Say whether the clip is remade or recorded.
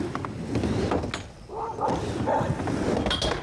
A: recorded